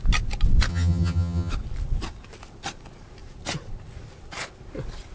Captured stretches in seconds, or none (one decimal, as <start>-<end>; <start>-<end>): 0.0-0.7; 1.5-5.1